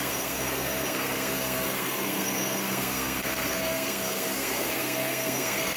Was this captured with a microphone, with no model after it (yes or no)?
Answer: no